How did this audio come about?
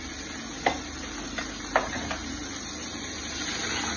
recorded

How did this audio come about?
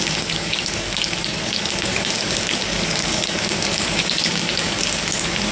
remade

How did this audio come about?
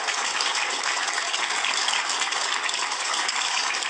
remade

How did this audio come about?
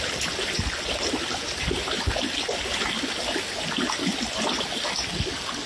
recorded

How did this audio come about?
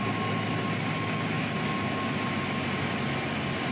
recorded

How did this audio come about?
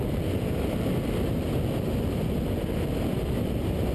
recorded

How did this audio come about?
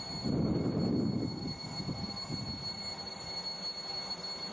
recorded